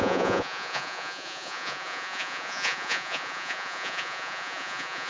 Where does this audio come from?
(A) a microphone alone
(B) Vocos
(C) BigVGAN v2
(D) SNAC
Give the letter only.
B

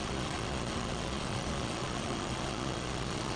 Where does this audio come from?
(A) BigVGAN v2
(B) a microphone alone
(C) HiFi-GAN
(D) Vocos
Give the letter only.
D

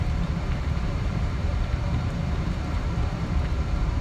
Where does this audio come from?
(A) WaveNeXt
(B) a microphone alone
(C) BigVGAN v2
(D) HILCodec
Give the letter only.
C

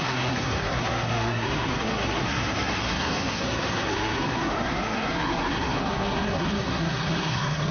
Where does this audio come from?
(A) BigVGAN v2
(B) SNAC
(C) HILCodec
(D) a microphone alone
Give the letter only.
B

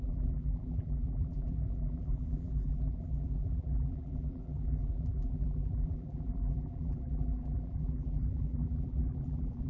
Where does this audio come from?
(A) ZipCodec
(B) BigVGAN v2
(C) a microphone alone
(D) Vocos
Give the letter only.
B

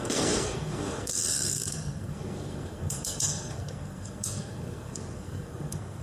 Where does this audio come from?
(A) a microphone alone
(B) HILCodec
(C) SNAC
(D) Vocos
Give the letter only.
C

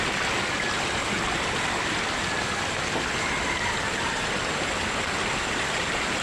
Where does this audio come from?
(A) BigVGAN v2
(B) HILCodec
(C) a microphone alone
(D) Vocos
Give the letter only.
C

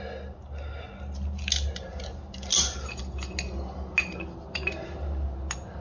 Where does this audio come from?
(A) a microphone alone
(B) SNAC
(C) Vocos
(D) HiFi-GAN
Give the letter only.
A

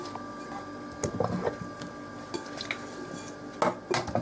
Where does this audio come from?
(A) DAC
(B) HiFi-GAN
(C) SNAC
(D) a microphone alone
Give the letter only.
D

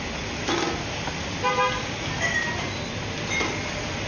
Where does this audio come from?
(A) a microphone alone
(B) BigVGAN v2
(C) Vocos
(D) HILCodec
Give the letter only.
A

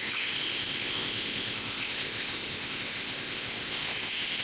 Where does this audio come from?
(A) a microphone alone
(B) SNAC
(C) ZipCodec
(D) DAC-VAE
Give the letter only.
C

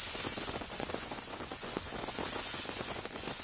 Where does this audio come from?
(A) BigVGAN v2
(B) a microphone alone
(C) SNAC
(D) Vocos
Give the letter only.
D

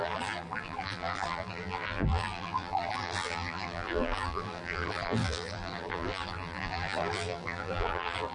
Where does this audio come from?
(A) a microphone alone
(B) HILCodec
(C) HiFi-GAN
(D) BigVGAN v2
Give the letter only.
D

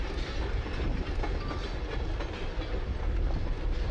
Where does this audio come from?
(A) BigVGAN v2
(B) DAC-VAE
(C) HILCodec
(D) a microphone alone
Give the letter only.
D